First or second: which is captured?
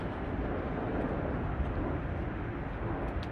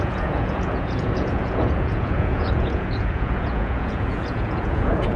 first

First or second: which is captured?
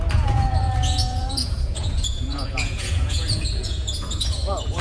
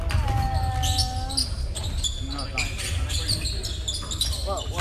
second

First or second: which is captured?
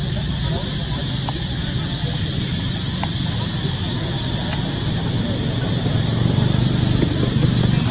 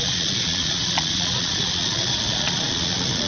first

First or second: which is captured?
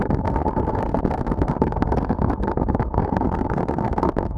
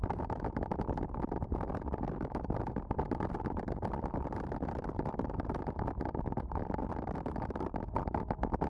second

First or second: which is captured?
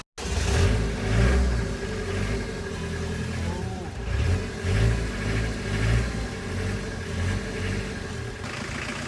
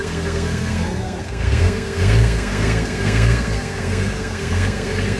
first